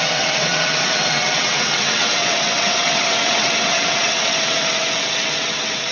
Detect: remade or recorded remade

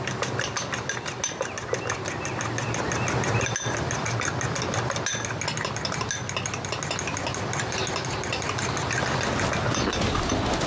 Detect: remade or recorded recorded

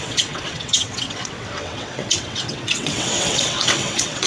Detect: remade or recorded remade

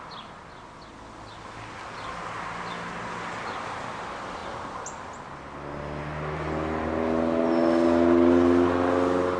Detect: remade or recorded recorded